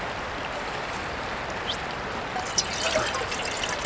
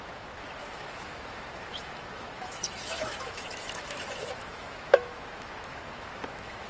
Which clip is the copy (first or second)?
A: second